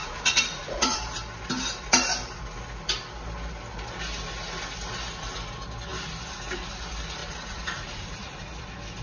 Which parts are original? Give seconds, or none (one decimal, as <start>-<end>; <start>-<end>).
1.0-7.2; 8.6-9.0